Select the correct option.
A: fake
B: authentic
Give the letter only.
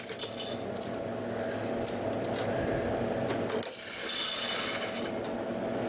B